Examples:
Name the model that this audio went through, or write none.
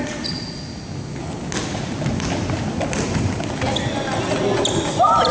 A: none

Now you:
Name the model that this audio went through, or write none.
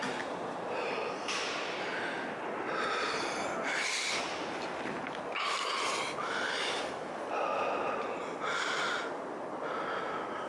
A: none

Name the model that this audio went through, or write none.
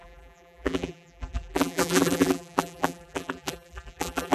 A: vocoder, BigVGAN v2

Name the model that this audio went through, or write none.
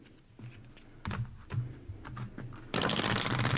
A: none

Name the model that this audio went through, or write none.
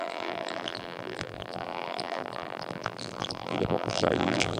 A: vocoder, BigVGAN v2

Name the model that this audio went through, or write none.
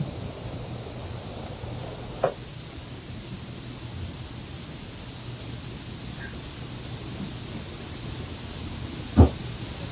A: none